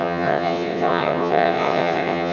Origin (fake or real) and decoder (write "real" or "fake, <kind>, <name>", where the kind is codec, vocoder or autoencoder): fake, vocoder, WaveNeXt